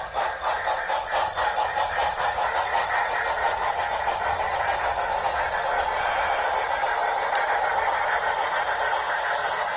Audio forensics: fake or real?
real